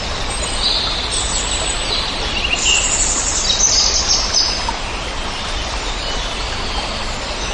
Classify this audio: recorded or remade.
recorded